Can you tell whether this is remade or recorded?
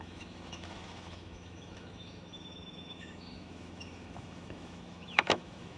remade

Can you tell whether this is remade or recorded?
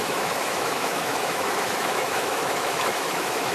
remade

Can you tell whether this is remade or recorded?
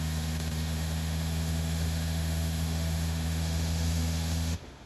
remade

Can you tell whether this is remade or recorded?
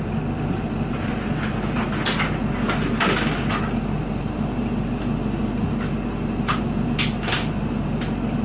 recorded